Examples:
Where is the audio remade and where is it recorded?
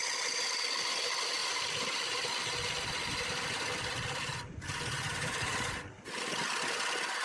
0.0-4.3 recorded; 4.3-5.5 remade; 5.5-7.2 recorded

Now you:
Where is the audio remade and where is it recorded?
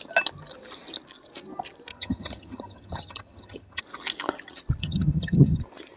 0.0-1.9 recorded; 1.9-3.8 remade; 3.8-4.8 recorded; 4.8-5.6 remade; 5.6-6.0 recorded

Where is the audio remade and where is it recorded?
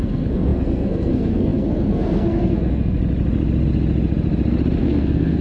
0.0-3.0 remade; 3.0-4.8 recorded; 4.8-5.4 remade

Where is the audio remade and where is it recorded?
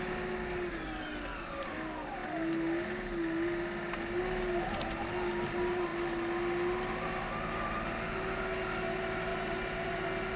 0.0-10.4 recorded